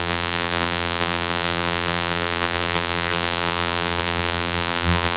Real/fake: fake